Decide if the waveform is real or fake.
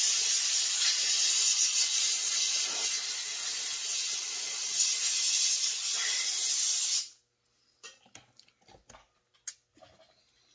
real